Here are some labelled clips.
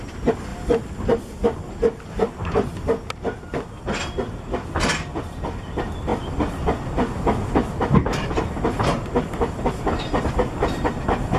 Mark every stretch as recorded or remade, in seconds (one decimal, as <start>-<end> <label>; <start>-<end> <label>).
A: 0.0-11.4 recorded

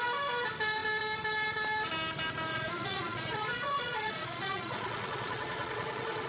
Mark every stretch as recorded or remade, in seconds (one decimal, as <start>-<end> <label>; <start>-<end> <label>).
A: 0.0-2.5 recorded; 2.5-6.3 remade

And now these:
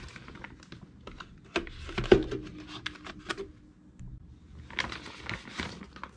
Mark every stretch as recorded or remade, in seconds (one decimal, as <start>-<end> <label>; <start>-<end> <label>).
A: 0.0-6.2 recorded

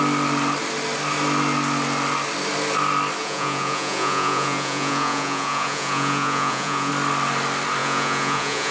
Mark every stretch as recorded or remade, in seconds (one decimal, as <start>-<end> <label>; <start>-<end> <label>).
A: 0.0-3.2 recorded; 3.2-6.9 remade; 6.9-7.8 recorded; 7.8-8.7 remade